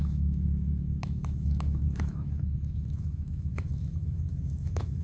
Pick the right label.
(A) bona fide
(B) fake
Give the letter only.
B